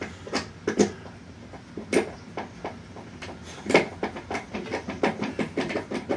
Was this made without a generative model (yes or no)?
yes